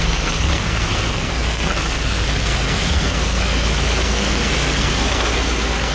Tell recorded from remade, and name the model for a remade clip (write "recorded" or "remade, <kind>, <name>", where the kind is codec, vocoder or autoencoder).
remade, codec, SNAC